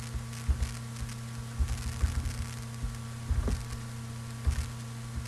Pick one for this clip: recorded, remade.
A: recorded